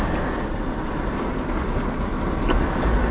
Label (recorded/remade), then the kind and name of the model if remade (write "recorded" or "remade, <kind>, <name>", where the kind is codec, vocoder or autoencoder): recorded